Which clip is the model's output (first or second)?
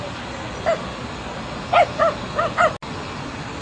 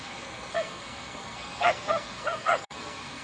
second